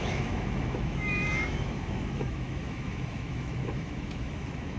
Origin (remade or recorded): remade